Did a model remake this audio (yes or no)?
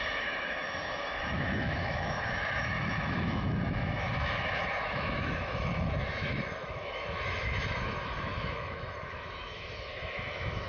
yes